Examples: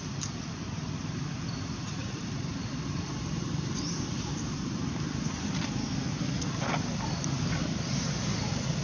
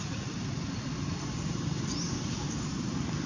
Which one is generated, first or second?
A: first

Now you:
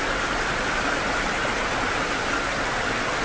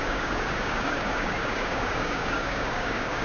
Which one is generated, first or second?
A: second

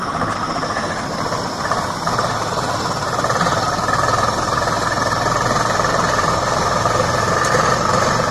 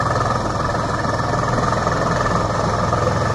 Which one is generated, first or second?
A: first